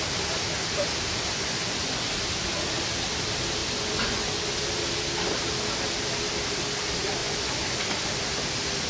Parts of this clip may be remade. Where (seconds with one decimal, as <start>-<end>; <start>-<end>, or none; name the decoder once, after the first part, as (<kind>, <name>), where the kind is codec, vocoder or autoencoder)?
1.3-2.1 (vocoder, Vocos); 3.6-4.6; 7.2-8.1